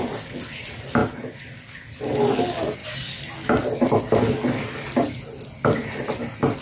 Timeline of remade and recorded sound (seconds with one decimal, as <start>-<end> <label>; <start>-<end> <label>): 0.0-6.6 recorded